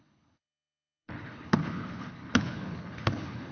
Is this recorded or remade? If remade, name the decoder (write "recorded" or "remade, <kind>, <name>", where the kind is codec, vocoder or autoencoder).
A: remade, codec, HILCodec